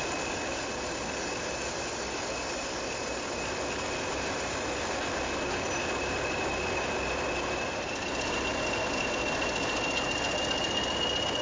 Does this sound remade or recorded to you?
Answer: recorded